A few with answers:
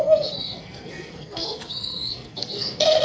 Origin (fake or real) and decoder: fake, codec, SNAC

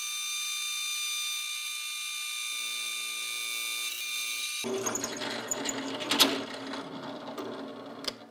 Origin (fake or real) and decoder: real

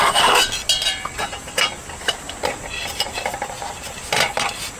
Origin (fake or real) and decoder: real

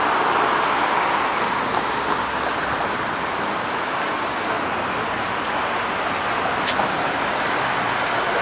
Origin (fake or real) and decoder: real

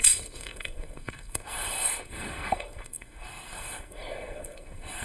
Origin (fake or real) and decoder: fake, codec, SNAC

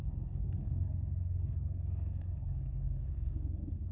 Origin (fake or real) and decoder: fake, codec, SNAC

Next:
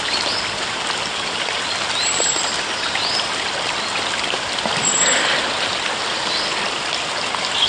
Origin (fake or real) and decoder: real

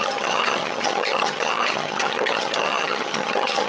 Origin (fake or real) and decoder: fake, vocoder, HiFi-GAN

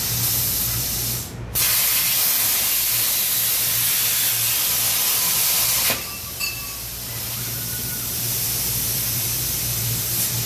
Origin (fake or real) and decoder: real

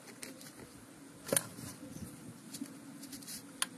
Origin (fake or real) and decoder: real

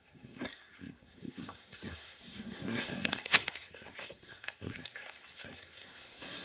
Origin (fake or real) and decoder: fake, codec, SNAC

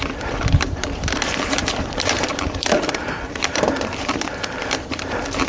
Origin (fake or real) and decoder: fake, vocoder, BigVGAN v2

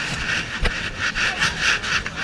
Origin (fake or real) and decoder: real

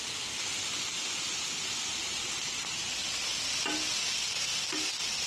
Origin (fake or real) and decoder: real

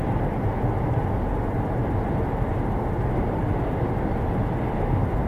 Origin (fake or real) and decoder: real